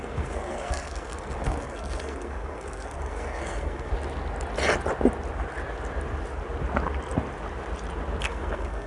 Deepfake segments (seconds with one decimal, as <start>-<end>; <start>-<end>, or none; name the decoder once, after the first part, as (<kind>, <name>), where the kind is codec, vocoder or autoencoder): 0.0-3.9 (codec, SNAC); 8.2-8.9